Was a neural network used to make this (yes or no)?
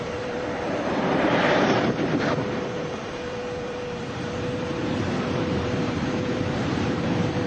yes